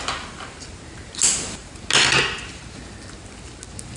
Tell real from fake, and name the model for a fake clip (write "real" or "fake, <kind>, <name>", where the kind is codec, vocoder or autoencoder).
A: real